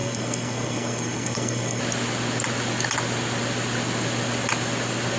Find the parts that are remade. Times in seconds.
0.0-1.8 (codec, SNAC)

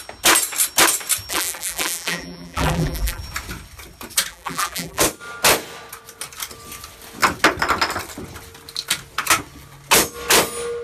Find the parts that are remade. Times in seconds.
1.3-3.2 (vocoder, BigVGAN v2); 4.3-5.0

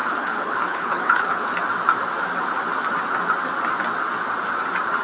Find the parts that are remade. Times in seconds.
0.0-1.5 (codec, HILCodec)